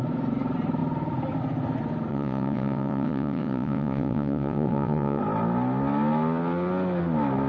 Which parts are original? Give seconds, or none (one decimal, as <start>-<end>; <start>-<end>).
0.0-2.1; 5.2-7.5